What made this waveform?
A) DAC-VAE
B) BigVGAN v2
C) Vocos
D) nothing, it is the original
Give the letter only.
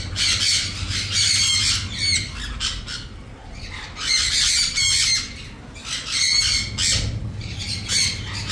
D